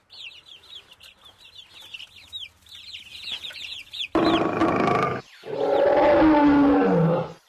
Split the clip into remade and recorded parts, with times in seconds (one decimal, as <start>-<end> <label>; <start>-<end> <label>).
0.0-3.1 recorded; 3.1-4.1 remade; 4.1-7.5 recorded